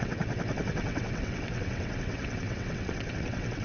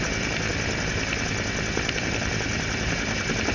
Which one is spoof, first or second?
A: first